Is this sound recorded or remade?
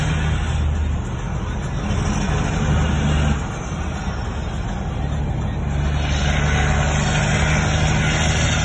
recorded